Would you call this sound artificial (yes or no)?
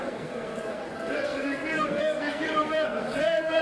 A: yes